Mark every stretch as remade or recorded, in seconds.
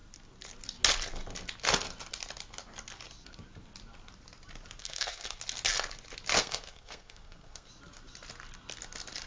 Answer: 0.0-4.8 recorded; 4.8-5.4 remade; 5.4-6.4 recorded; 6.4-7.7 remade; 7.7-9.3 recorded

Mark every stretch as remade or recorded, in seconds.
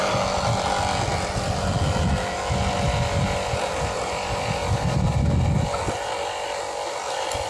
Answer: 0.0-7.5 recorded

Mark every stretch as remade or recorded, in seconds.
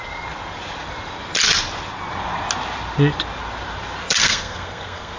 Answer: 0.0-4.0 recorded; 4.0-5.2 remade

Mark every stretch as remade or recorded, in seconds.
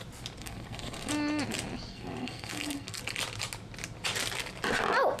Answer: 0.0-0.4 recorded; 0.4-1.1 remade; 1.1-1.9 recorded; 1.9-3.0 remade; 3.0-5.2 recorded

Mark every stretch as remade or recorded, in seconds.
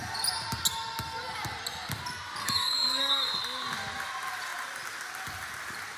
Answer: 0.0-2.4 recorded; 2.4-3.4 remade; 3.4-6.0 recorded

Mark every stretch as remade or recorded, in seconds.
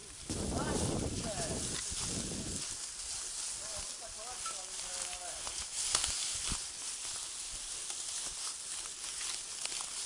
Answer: 0.0-10.1 recorded